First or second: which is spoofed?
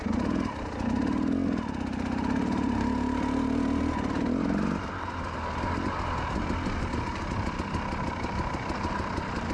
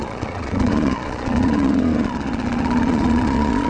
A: second